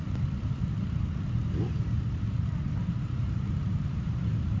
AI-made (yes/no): no